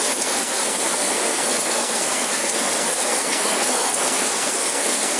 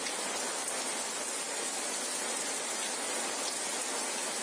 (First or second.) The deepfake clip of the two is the first